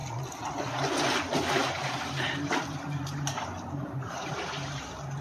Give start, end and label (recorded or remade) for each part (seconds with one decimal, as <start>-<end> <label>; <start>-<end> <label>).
0.0-1.6 recorded; 1.6-4.7 remade; 4.7-5.2 recorded